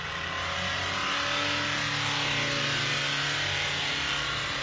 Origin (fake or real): real